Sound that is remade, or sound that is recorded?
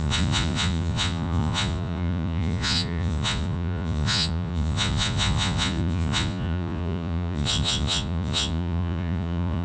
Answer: remade